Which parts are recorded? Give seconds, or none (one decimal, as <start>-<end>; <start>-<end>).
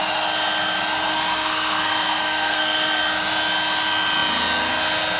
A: 0.0-1.1; 3.0-5.2